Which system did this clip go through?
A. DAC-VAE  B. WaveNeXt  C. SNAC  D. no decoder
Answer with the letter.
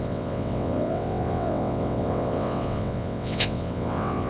B